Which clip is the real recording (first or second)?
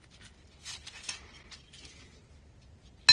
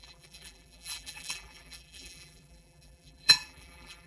first